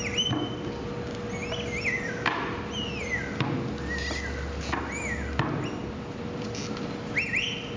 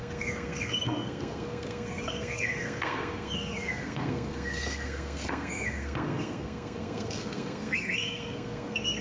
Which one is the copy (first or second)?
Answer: second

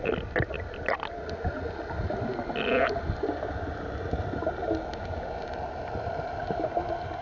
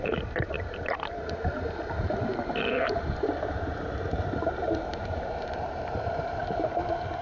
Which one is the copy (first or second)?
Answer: second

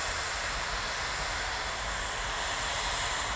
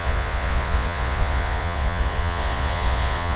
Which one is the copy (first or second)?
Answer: second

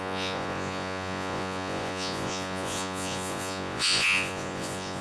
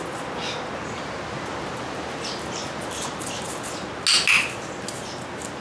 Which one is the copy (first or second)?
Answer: first